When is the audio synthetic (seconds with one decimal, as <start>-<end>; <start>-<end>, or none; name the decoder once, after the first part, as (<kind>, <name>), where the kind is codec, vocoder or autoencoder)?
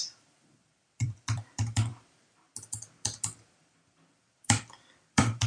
0.0-1.9 (vocoder, BigVGAN v2); 4.1-5.5